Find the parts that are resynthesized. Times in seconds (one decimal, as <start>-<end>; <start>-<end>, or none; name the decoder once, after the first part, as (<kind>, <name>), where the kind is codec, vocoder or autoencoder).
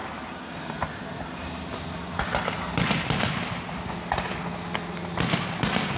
none